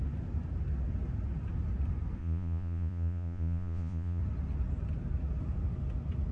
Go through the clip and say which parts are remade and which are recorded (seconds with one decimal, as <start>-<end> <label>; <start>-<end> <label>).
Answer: 0.0-2.2 recorded; 2.2-4.2 remade; 4.2-6.3 recorded